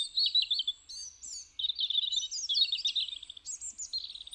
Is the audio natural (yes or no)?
yes